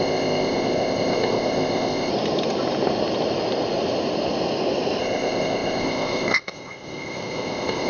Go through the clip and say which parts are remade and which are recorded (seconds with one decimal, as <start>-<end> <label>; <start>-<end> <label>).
0.0-2.1 remade; 2.1-5.0 recorded; 5.0-7.9 remade